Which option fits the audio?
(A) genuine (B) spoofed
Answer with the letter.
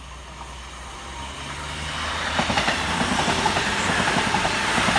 A